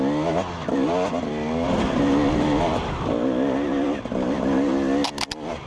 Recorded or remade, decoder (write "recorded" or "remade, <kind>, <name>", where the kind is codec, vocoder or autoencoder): recorded